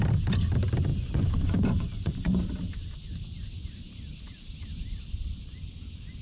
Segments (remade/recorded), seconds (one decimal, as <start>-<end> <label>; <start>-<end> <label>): 0.0-0.9 recorded; 0.9-2.4 remade; 2.4-6.2 recorded